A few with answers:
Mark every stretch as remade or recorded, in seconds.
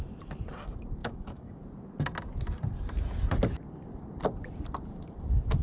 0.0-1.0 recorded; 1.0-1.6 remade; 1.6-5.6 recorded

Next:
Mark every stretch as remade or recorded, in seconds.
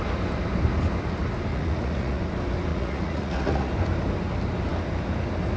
0.0-1.5 recorded; 1.5-2.2 remade; 2.2-2.7 recorded; 2.7-3.7 remade; 3.7-5.6 recorded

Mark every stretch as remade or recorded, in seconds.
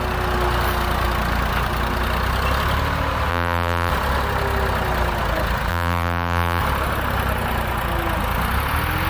0.0-3.3 recorded; 3.3-3.9 remade; 3.9-5.7 recorded; 5.7-6.6 remade; 6.6-9.1 recorded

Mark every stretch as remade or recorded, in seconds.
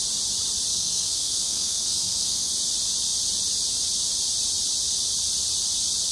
0.0-0.7 recorded; 0.7-2.5 remade; 2.5-6.1 recorded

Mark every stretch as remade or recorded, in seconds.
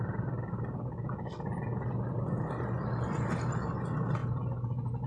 0.0-5.1 recorded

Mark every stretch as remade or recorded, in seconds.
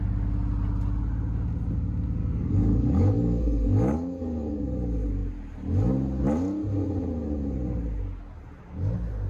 0.0-2.2 recorded; 2.2-4.6 remade; 4.6-9.3 recorded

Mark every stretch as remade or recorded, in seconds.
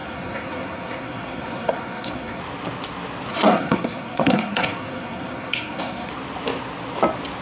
0.0-2.4 remade; 2.4-3.3 recorded; 3.3-6.1 remade; 6.1-7.4 recorded